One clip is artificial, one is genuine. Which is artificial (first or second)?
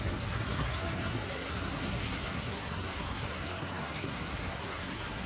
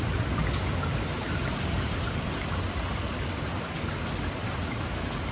first